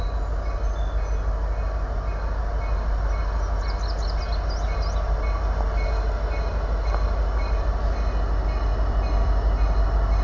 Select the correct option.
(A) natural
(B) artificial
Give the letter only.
A